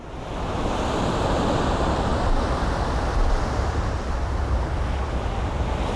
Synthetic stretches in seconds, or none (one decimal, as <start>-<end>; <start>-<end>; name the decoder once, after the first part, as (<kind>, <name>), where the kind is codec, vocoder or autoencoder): none